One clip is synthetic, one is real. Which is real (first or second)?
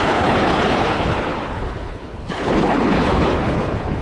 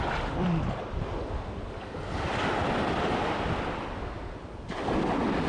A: second